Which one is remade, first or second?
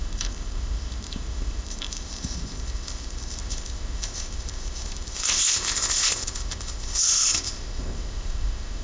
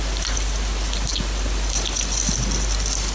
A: first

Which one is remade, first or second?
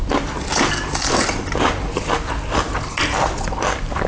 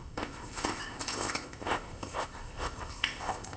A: second